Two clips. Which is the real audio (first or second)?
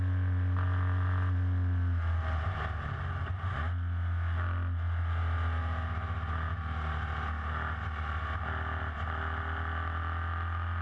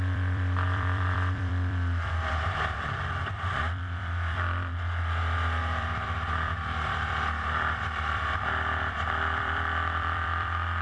first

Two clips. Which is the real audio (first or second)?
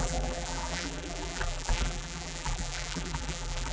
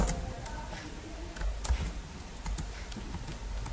second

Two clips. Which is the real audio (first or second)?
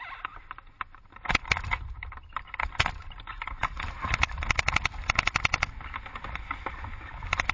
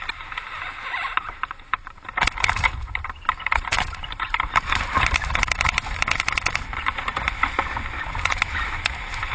first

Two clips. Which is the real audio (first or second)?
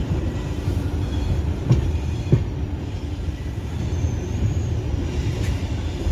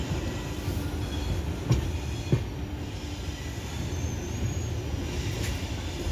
second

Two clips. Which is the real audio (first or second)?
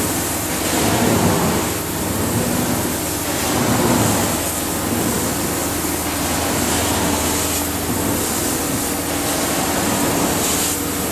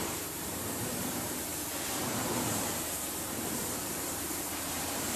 first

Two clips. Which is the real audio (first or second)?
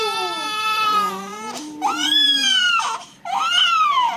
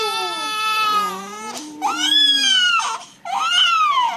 second